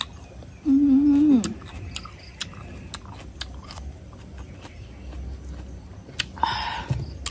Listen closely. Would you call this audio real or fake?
real